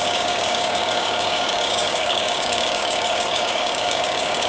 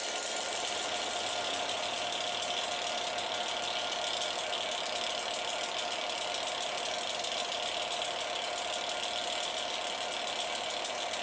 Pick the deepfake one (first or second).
first